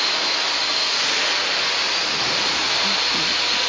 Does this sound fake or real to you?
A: real